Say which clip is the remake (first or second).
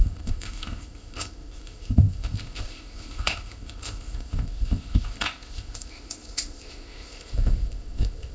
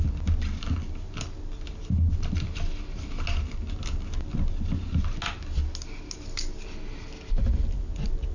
first